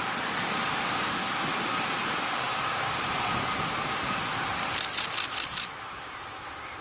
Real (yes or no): yes